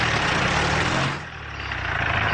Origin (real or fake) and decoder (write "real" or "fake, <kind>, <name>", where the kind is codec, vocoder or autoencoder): real